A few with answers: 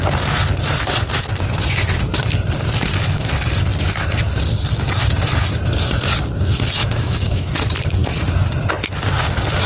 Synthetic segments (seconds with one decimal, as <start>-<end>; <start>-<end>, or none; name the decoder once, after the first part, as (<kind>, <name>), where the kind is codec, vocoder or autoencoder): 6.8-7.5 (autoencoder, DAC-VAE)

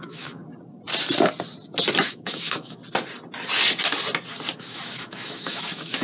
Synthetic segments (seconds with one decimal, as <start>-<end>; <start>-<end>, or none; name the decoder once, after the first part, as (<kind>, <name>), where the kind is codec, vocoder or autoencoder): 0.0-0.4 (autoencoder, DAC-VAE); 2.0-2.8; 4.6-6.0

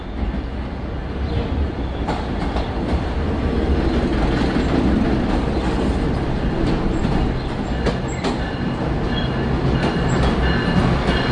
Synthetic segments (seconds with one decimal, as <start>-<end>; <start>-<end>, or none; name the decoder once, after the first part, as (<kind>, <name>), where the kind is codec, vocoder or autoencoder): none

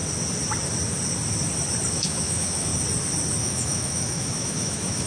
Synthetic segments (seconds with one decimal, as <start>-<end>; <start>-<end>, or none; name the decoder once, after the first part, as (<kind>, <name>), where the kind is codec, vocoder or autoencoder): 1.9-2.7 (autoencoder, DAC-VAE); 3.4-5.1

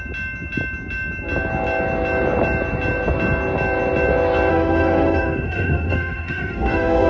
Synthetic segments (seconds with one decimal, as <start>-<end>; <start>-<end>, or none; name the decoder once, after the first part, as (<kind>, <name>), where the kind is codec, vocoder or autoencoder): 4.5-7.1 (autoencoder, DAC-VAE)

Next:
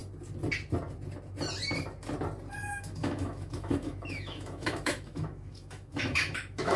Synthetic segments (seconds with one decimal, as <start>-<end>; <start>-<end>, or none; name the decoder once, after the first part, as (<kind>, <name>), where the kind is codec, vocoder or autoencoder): 2.6-6.8 (autoencoder, DAC-VAE)

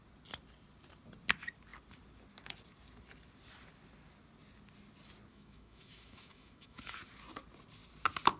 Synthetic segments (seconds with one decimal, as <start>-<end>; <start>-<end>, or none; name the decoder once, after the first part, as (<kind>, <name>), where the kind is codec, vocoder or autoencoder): 5.3-7.0 (autoencoder, DAC-VAE)

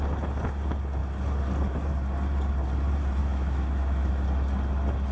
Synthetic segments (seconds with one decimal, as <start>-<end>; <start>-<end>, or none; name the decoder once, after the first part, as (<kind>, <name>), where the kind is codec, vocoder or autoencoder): 3.2-4.1 (autoencoder, DAC-VAE)